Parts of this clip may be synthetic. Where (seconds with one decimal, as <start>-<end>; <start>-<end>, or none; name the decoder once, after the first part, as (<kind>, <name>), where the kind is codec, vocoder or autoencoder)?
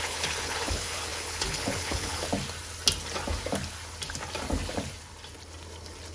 0.0-2.3 (codec, HILCodec)